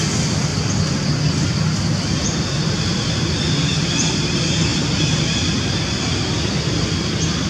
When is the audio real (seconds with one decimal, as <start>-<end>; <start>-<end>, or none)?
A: 0.0-7.5